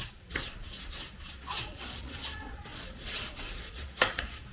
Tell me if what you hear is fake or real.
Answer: fake